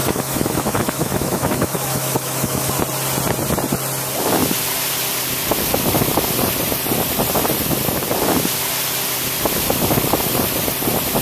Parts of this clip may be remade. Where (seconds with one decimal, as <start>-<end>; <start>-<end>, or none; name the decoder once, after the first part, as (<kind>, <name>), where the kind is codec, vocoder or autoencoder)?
0.0-2.7 (autoencoder, DAC-VAE)